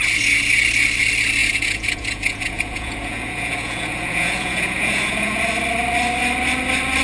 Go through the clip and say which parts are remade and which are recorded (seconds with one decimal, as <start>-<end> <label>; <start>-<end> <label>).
0.0-1.4 recorded; 1.4-5.4 remade; 5.4-7.0 recorded

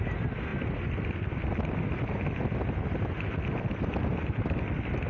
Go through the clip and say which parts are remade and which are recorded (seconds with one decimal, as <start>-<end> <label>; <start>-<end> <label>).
0.0-5.1 recorded

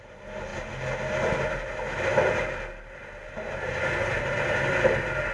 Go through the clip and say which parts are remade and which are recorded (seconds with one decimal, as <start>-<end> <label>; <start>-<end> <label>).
0.0-5.3 recorded

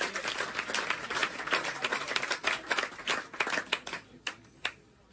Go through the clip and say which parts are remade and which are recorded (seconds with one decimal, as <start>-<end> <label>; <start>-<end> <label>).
0.0-5.1 recorded

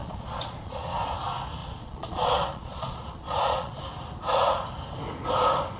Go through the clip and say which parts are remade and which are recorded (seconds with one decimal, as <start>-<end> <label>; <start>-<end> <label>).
0.0-1.2 remade; 1.2-1.6 recorded; 1.6-3.8 remade; 3.8-5.8 recorded